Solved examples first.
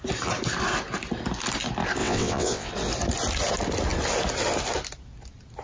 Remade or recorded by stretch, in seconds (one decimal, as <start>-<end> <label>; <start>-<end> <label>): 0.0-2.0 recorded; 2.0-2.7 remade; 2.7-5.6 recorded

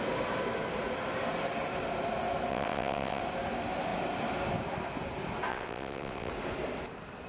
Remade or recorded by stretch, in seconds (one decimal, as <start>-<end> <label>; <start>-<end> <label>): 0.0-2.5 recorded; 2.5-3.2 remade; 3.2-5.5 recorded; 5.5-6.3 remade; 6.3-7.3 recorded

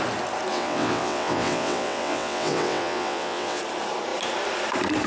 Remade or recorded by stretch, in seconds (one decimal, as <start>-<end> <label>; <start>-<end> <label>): 0.0-0.5 recorded; 0.5-3.6 remade; 3.6-5.1 recorded

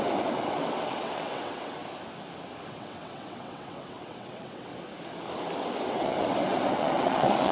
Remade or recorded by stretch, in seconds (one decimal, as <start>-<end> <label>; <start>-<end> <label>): 0.0-1.8 remade; 1.8-2.7 recorded; 2.7-4.7 remade; 4.7-5.9 recorded; 5.9-7.5 remade

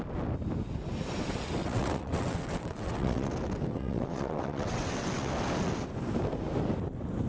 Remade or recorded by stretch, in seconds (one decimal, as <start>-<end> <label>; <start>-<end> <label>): 0.0-1.6 recorded; 1.6-3.3 remade; 3.3-3.7 recorded; 3.7-5.3 remade; 5.3-7.3 recorded

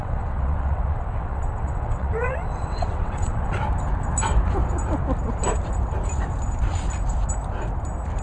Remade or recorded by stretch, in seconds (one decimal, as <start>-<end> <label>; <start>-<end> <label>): 0.0-3.6 remade; 3.6-8.2 recorded

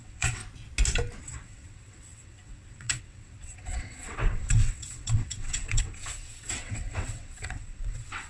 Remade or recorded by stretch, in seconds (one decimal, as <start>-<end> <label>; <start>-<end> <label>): 0.0-0.4 remade; 0.4-1.2 recorded; 1.2-8.3 remade